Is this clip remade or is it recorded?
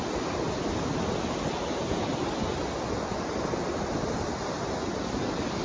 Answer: recorded